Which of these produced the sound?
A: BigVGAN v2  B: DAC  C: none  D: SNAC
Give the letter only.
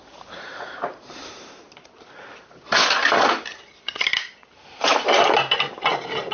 A